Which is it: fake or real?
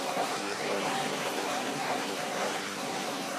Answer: fake